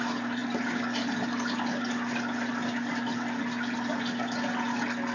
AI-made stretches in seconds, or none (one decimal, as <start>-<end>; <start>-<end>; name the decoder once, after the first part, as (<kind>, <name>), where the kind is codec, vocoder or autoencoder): none